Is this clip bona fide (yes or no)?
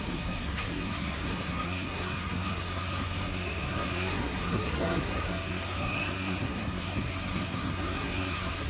no